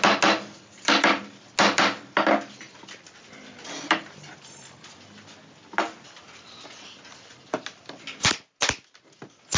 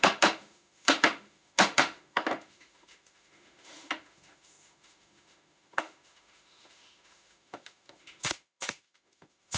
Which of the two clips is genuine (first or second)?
first